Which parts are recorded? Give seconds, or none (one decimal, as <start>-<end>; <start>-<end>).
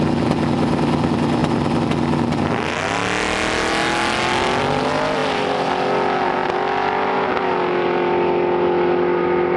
0.0-9.6